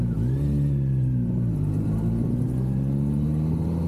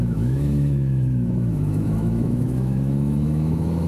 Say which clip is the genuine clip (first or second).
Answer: first